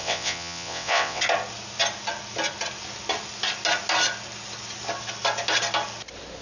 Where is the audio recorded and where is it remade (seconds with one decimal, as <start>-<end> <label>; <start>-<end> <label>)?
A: 0.0-1.2 remade; 1.2-6.4 recorded